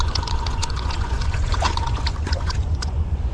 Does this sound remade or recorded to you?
remade